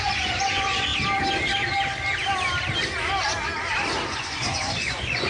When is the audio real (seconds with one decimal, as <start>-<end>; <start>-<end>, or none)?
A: 0.9-4.1